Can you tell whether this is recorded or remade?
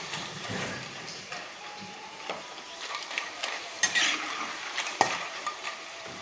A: remade